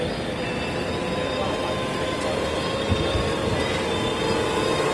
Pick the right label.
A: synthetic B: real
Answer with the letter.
B